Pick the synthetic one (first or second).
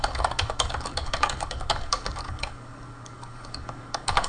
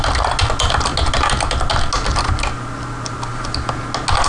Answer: first